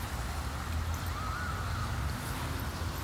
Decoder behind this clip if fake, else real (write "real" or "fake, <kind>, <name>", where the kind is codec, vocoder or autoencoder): real